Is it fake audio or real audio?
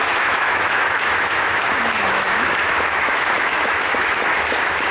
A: fake